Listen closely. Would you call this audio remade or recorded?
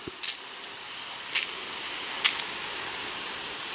recorded